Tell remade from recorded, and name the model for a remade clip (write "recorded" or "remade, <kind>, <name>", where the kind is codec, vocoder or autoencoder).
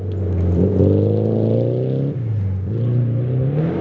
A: recorded